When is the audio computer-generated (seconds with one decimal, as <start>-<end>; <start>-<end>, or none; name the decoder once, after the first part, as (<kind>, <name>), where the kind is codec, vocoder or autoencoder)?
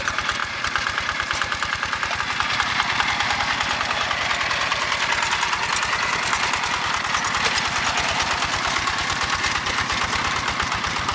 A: none